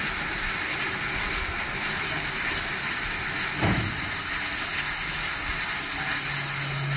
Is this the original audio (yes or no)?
yes